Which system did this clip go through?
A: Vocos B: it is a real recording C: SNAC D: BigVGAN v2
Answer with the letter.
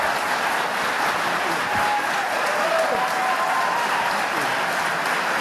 B